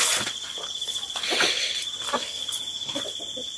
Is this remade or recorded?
recorded